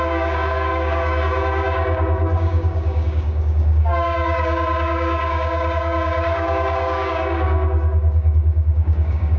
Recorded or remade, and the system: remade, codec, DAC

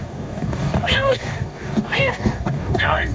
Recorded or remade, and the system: remade, codec, DAC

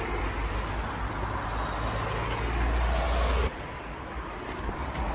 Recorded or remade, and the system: recorded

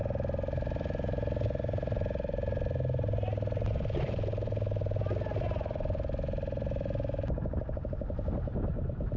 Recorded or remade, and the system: recorded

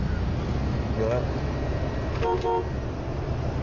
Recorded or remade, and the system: recorded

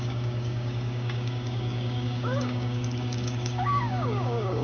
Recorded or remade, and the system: remade, codec, DAC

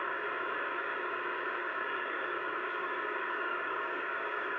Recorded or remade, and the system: remade, codec, DAC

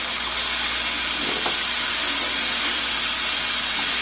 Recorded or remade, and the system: recorded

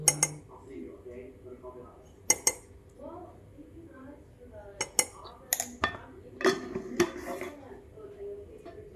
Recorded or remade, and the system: recorded